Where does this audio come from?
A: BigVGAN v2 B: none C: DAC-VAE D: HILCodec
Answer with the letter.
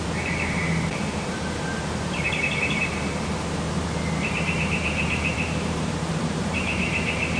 A